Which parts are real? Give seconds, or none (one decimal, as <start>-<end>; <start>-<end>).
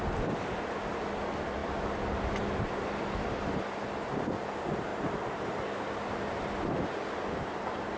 0.0-4.9; 6.4-8.0